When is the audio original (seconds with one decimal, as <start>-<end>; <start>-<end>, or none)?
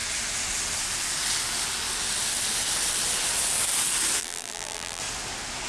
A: 0.0-4.2; 5.0-5.7